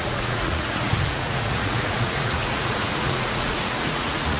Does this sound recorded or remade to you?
remade